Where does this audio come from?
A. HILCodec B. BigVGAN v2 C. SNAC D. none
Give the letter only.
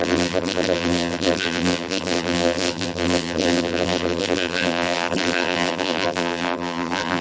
B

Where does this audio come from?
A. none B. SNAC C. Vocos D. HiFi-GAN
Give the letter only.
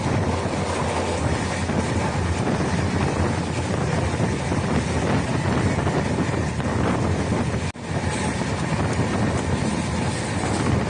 A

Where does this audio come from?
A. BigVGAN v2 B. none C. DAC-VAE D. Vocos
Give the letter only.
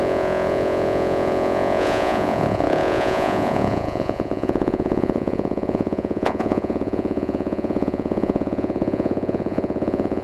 D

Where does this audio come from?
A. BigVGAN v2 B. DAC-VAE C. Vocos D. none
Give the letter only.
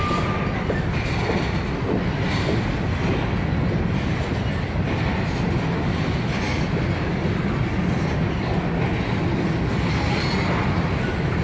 D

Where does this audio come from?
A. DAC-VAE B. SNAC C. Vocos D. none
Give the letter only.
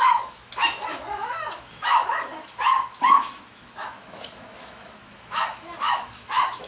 A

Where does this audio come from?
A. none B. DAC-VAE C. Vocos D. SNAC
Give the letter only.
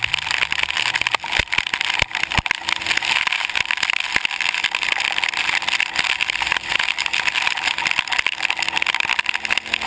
A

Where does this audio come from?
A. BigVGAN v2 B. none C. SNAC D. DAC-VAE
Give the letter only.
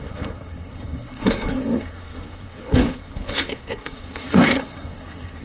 C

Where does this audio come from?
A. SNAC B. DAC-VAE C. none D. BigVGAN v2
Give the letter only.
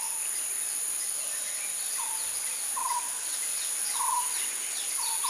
C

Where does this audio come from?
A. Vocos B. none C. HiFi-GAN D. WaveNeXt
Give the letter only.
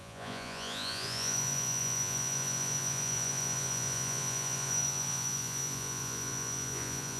A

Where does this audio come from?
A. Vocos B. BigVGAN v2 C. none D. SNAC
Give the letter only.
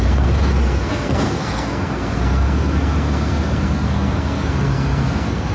D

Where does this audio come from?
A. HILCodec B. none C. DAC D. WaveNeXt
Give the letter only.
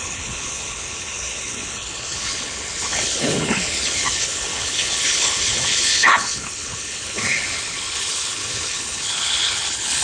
A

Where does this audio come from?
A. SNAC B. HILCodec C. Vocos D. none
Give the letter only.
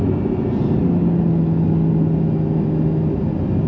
D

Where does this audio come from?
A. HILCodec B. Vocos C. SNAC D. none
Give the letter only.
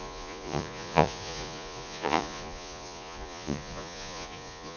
B